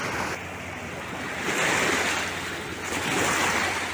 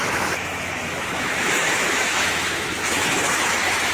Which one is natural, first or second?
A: first